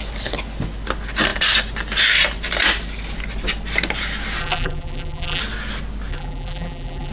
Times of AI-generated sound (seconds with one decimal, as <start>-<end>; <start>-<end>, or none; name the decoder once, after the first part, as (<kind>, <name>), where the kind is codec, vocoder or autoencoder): 4.4-5.4 (vocoder, BigVGAN v2); 6.1-7.1